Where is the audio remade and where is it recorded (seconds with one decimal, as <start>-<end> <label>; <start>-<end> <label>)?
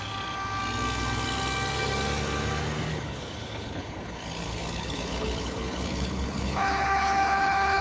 0.0-2.9 recorded; 2.9-7.8 remade